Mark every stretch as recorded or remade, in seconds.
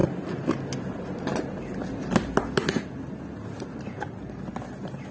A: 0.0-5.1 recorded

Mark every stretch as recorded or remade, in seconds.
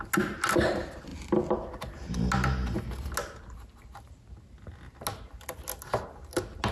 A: 0.0-6.7 recorded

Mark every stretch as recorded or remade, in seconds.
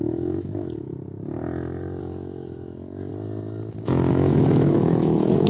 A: 0.0-0.9 remade; 0.9-2.0 recorded; 2.0-3.1 remade; 3.1-4.1 recorded; 4.1-5.5 remade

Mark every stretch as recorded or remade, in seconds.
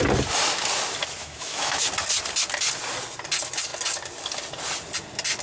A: 0.0-1.2 recorded; 1.2-1.8 remade; 1.8-5.4 recorded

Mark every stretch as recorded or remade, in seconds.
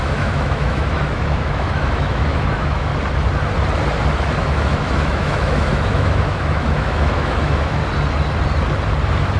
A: 0.0-2.9 remade; 2.9-4.4 recorded; 4.4-7.8 remade; 7.8-9.4 recorded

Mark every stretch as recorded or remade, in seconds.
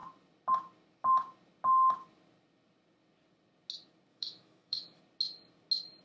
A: 0.0-4.1 recorded; 4.1-5.0 remade; 5.0-6.0 recorded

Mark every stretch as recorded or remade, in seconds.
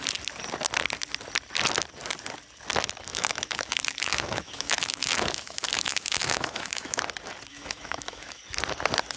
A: 0.0-3.1 recorded; 3.1-7.0 remade; 7.0-7.5 recorded; 7.5-8.4 remade; 8.4-9.2 recorded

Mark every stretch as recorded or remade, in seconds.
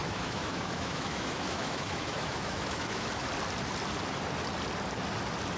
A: 0.0-3.3 remade; 3.3-5.6 recorded